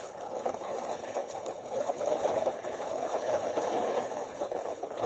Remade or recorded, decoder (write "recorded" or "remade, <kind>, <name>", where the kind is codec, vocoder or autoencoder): remade, codec, HILCodec